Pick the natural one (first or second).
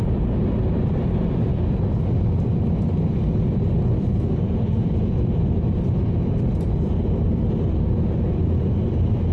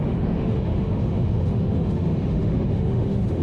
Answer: first